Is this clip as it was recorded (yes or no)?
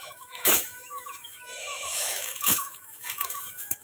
no